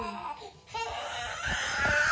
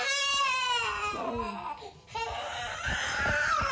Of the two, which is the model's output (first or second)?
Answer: second